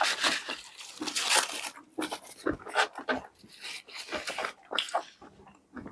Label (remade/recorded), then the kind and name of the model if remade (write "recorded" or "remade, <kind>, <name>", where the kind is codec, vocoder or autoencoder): recorded